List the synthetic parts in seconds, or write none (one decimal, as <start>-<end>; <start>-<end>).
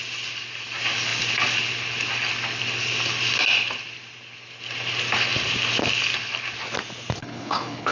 7.2-7.9